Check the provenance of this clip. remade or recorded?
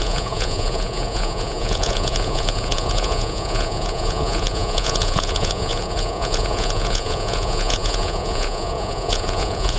remade